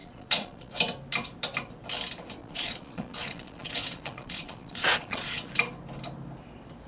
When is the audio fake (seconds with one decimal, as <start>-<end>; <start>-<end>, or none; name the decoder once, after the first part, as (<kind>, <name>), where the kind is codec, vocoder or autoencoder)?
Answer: 0.0-0.7 (vocoder, Vocos); 2.4-5.5